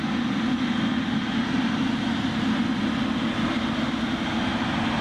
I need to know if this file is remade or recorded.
recorded